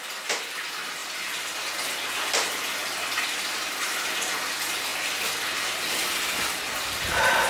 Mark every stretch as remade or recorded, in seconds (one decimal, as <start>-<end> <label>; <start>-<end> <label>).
0.0-1.0 recorded; 1.0-1.7 remade; 1.7-4.9 recorded; 4.9-7.5 remade